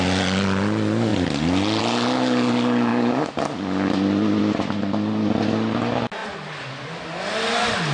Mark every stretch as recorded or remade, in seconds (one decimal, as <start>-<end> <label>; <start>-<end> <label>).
0.0-7.9 recorded